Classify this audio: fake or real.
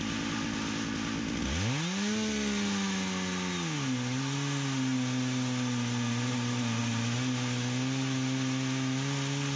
real